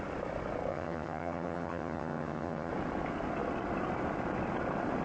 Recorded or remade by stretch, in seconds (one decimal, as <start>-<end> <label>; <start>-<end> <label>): 0.0-0.7 recorded; 0.7-2.7 remade; 2.7-5.0 recorded